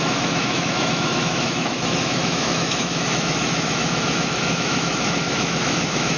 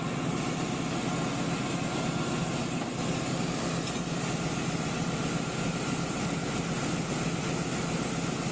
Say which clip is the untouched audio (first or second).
second